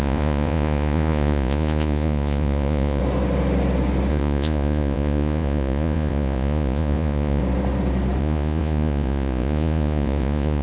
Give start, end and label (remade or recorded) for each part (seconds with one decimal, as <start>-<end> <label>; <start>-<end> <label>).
0.0-3.0 remade; 3.0-4.1 recorded; 4.1-7.4 remade; 7.4-8.2 recorded; 8.2-10.6 remade